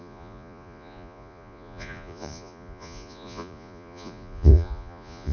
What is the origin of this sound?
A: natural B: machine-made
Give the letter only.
B